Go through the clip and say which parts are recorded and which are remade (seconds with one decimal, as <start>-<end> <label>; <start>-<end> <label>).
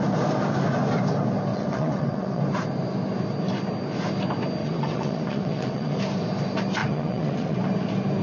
0.0-1.5 recorded; 1.5-2.4 remade; 2.4-4.6 recorded; 4.6-6.0 remade; 6.0-6.8 recorded; 6.8-7.6 remade; 7.6-8.2 recorded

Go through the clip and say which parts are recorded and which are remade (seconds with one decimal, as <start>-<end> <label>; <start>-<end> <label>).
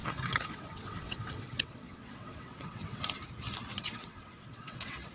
0.0-3.0 remade; 3.0-3.7 recorded; 3.7-5.1 remade